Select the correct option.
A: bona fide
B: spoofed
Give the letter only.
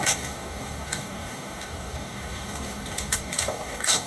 B